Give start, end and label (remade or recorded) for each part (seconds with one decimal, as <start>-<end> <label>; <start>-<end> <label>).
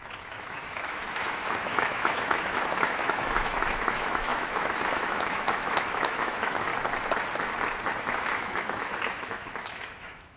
0.0-6.7 remade; 6.7-8.0 recorded; 8.0-10.4 remade